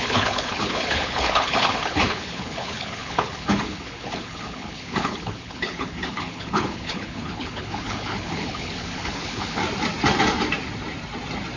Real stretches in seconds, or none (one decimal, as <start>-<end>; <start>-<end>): 9.6-11.6